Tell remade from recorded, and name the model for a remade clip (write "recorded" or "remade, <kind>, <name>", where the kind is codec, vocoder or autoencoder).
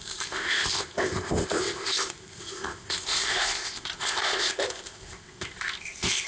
remade, codec, ZipCodec